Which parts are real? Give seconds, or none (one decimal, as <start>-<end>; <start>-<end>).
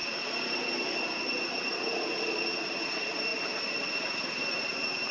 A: 0.0-5.1